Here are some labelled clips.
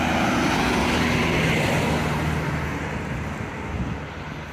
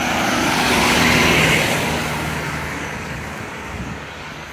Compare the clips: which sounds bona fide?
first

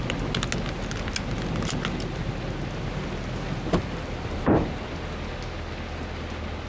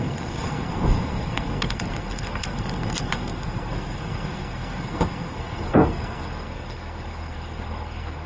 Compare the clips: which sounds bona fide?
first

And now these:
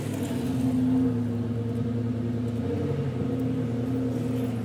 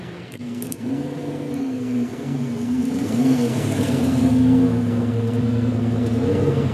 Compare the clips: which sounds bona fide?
first